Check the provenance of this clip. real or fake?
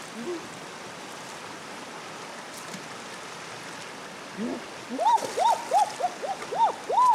real